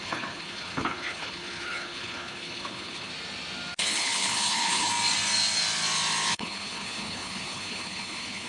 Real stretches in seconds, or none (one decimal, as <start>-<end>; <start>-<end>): 3.1-3.8; 4.9-6.3